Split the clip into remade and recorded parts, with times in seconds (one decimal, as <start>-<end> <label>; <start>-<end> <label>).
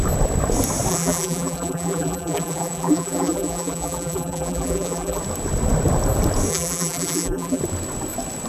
0.0-0.9 recorded; 0.9-5.2 remade; 5.2-6.5 recorded; 6.5-7.6 remade; 7.6-8.5 recorded